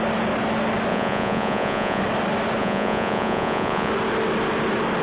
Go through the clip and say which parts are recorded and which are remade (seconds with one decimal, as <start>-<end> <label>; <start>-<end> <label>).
0.0-0.9 recorded; 0.9-2.0 remade; 2.0-2.6 recorded; 2.6-3.9 remade; 3.9-5.0 recorded